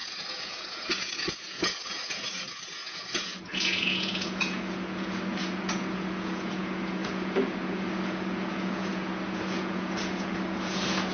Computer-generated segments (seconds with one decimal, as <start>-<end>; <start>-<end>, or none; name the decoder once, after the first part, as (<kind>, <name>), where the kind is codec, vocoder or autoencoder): 0.0-11.1 (vocoder, Vocos)

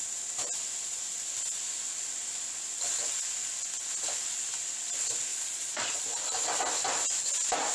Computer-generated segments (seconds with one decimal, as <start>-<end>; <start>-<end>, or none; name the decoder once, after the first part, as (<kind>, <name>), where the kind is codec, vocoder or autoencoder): 5.3-6.0 (vocoder, Vocos)

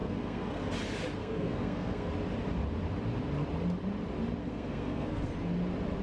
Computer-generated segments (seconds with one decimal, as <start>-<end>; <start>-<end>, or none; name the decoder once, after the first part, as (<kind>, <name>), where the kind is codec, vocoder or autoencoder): 0.0-0.7 (codec, SNAC); 1.2-2.1; 4.4-5.3

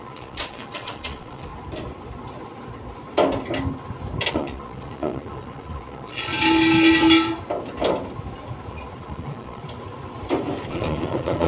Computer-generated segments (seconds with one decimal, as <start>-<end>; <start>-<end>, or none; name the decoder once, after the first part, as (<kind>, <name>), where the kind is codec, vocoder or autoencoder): 0.0-1.5 (vocoder, Vocos); 4.3-6.3; 8.7-9.6; 10.7-11.5

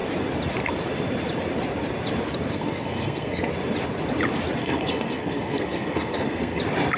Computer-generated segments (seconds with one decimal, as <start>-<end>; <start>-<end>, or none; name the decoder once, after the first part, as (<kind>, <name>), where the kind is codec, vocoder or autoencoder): 2.5-3.5 (codec, SNAC); 4.6-6.6

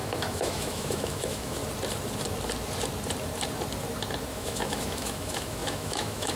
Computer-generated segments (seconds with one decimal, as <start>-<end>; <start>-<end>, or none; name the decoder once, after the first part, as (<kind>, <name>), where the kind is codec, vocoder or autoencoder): 0.0-1.6 (autoencoder, DAC-VAE); 4.3-6.4

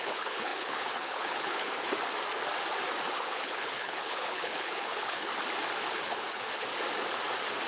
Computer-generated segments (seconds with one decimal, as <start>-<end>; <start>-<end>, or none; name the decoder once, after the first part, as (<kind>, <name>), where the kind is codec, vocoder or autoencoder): 0.0-1.9 (codec, HILCodec); 3.1-5.3; 5.8-6.7

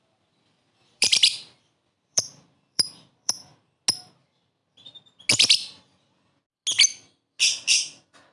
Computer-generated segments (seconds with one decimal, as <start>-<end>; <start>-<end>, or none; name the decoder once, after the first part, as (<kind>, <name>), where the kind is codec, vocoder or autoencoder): 0.0-3.5 (vocoder, BigVGAN v2); 4.1-4.6; 7.4-8.3